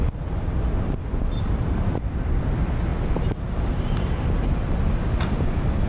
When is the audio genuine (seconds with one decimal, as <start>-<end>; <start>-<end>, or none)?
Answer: 0.0-5.9

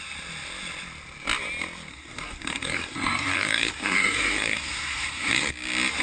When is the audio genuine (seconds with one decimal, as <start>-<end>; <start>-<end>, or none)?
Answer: 0.0-1.9; 5.5-6.0

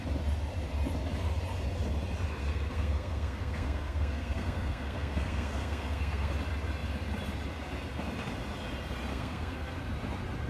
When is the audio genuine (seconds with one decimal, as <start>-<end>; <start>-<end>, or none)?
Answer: 0.0-2.4; 6.3-9.1; 9.8-10.5